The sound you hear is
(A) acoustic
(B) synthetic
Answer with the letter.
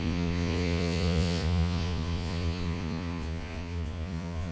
B